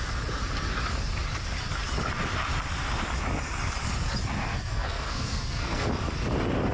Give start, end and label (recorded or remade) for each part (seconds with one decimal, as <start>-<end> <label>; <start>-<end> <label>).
0.0-4.4 recorded; 4.4-5.9 remade; 5.9-6.7 recorded